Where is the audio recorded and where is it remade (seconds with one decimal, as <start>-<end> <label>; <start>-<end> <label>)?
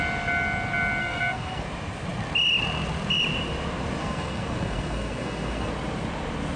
0.0-1.0 recorded; 1.0-1.6 remade; 1.6-4.0 recorded; 4.0-5.7 remade; 5.7-6.6 recorded